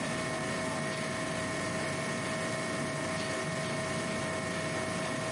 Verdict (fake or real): real